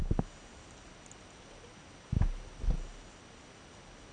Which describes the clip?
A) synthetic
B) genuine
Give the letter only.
B